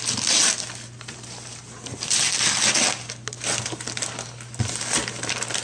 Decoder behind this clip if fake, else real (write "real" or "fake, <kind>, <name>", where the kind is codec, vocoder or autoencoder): real